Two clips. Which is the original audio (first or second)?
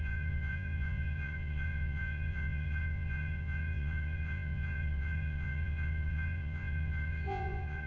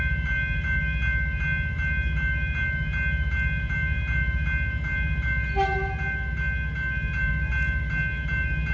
second